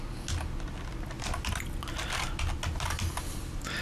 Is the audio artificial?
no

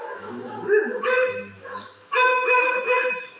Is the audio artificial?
yes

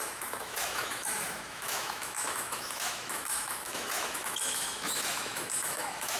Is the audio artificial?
yes